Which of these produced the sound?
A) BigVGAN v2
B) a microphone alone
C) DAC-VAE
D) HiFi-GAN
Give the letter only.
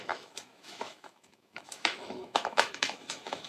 C